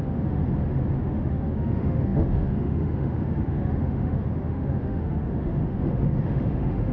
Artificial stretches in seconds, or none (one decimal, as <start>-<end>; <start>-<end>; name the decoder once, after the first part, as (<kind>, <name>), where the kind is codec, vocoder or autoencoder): 0.0-0.4 (autoencoder, DAC-VAE); 1.0-6.9